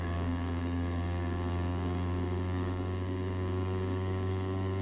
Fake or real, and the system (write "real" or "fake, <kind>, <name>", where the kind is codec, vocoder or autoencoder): fake, codec, DAC